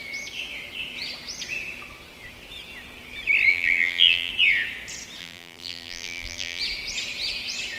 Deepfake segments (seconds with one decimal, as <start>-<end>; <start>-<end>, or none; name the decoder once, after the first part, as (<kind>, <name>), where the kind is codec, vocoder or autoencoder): 3.5-4.3 (vocoder, BigVGAN v2); 5.2-6.6